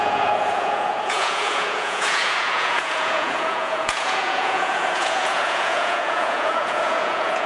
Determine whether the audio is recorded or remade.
remade